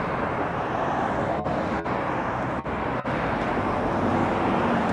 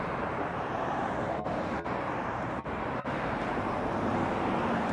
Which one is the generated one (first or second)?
second